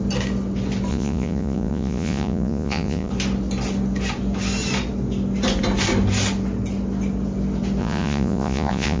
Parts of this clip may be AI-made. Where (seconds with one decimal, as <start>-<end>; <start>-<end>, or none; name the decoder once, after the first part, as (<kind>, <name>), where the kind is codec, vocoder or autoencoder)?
0.9-3.1 (vocoder, Vocos); 7.8-9.0

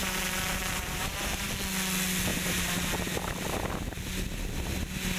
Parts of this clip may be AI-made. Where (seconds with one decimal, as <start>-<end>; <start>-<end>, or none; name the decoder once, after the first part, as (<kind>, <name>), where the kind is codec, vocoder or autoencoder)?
0.0-1.5 (vocoder, BigVGAN v2); 2.3-2.9

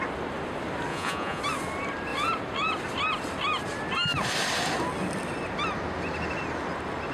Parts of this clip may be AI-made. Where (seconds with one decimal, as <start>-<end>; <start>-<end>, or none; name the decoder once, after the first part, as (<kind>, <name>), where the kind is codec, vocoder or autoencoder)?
0.9-1.4 (vocoder, Vocos)

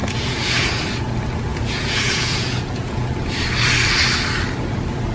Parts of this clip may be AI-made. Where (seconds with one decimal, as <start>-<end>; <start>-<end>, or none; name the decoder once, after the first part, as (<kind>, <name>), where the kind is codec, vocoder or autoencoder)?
0.0-0.7 (vocoder, Vocos); 1.5-3.1

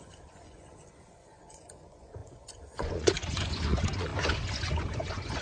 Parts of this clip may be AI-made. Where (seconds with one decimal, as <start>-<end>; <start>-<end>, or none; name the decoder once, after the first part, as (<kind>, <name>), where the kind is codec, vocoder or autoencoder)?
0.0-5.4 (vocoder, Vocos)

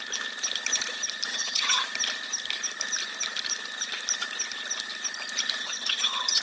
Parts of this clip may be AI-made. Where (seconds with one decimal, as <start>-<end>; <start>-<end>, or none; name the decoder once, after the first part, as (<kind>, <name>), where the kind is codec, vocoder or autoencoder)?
1.3-1.8 (vocoder, HiFi-GAN); 5.6-6.4